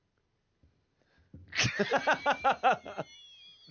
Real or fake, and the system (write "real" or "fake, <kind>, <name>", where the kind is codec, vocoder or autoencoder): real